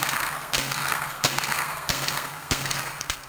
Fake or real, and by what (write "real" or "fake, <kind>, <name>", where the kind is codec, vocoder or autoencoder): fake, codec, SNAC